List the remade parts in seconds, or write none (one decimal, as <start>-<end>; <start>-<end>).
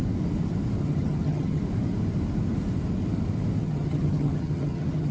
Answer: 0.8-1.6; 3.6-5.1